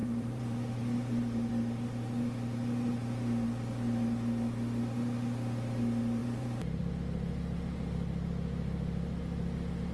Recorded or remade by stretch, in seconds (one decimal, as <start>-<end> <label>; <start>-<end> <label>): 0.0-1.5 remade; 1.5-6.2 recorded; 6.2-6.8 remade; 6.8-9.9 recorded